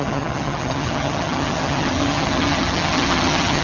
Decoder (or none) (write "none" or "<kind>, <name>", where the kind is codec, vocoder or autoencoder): vocoder, HiFi-GAN